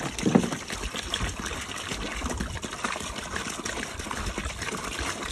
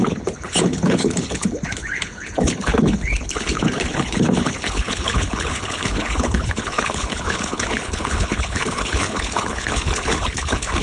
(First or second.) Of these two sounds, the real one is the first